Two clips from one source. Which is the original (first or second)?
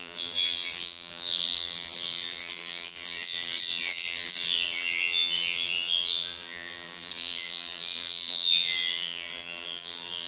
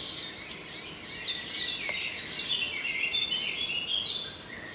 second